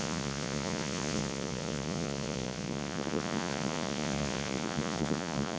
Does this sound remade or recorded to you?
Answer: remade